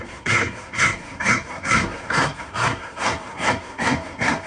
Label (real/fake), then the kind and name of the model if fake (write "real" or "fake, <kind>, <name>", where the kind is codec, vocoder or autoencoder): fake, codec, SNAC